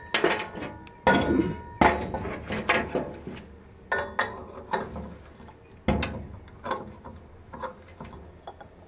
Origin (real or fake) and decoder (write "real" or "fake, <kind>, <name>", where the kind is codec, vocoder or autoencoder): real